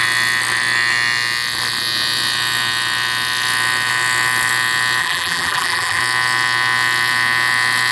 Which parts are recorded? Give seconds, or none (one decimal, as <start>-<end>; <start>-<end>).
0.0-5.0; 6.0-7.9

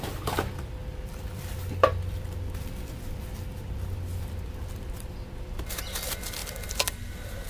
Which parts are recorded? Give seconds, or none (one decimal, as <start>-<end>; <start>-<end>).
0.0-0.8; 5.3-7.5

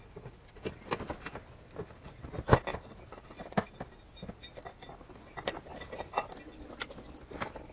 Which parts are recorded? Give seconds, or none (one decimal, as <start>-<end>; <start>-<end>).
0.0-2.7; 3.6-5.7; 6.3-7.7

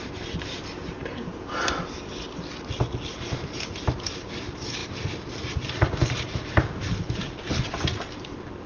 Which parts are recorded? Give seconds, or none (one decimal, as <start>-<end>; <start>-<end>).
1.0-3.1; 7.4-8.1

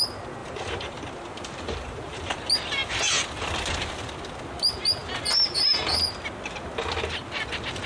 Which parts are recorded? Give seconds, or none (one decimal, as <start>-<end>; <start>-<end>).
0.0-0.4; 2.4-5.0; 5.9-7.9

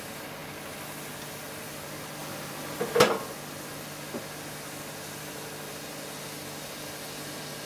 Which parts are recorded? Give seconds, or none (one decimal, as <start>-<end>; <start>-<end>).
0.0-7.7